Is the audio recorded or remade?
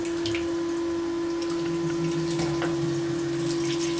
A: recorded